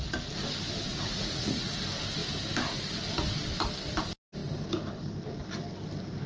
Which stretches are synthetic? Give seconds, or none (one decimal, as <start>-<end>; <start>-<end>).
0.9-1.7